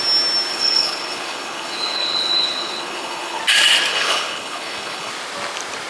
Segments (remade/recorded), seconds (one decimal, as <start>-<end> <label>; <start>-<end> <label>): 0.0-0.5 recorded; 0.5-3.4 remade; 3.4-3.9 recorded; 3.9-5.1 remade; 5.1-5.9 recorded